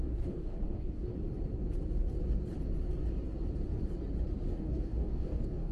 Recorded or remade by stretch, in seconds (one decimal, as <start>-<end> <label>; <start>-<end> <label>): 0.0-1.1 remade; 1.1-4.5 recorded; 4.5-5.7 remade